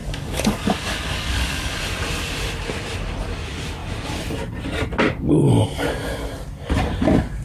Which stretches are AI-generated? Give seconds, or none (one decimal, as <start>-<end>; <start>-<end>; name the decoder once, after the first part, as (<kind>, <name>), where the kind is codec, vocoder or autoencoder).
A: 0.0-1.8 (codec, DAC)